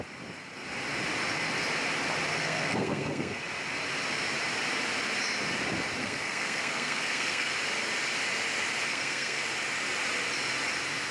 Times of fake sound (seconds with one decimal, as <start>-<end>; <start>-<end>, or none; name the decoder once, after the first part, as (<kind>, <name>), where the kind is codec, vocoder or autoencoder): 2.3-3.4 (codec, SNAC); 6.0-7.5; 8.9-9.4

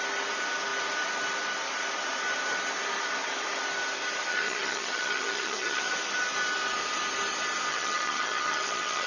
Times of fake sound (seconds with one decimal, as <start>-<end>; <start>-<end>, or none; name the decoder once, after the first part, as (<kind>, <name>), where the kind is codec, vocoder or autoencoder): 4.3-5.9 (vocoder, HiFi-GAN); 7.7-9.1

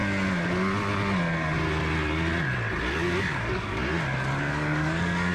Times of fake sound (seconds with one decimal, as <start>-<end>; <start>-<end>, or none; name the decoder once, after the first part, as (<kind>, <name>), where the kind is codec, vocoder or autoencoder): 3.2-3.8 (codec, DAC); 4.4-5.3

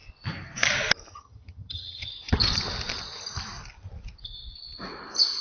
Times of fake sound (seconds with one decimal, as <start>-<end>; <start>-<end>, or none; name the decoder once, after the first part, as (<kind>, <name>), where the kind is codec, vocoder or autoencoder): 1.1-2.1 (vocoder, HiFi-GAN)